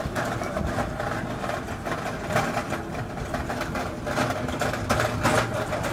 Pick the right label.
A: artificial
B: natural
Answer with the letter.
B